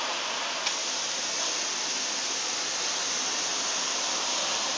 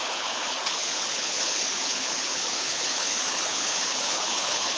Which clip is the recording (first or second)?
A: first